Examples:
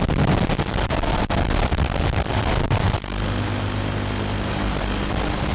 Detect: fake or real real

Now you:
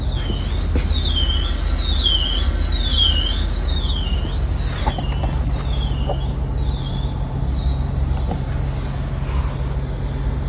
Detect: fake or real real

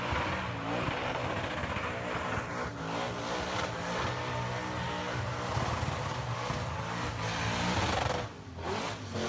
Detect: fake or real real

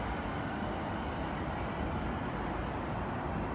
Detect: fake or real real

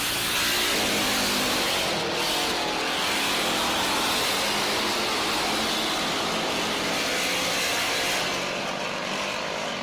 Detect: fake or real real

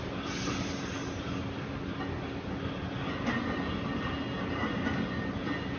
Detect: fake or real real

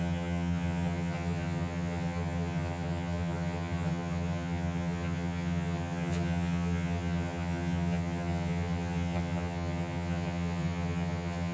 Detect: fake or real fake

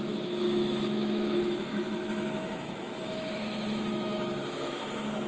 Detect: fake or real fake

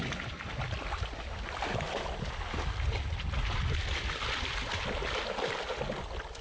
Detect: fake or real real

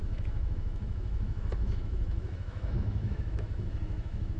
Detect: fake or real fake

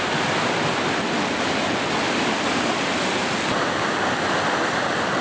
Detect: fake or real real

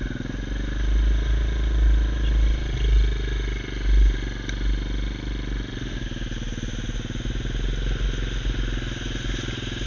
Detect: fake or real real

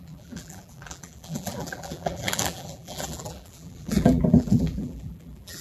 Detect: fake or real fake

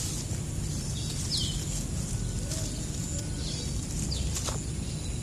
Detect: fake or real real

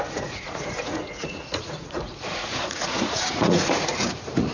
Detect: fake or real fake